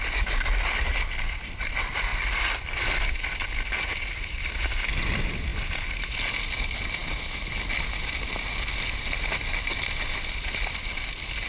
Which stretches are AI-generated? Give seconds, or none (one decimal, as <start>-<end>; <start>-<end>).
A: none